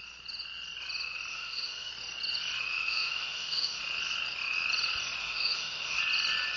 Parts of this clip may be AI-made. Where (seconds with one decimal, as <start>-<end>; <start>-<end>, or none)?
1.3-1.9; 2.8-3.8; 5.2-6.0